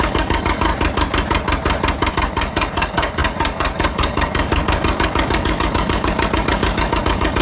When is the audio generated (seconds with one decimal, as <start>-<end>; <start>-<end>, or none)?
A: 0.0-0.7; 2.1-7.4